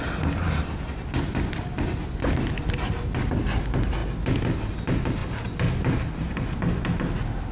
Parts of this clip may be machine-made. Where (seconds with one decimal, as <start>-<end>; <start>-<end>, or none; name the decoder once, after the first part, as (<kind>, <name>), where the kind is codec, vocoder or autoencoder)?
none